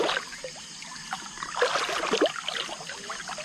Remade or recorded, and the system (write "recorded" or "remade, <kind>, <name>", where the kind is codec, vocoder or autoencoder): recorded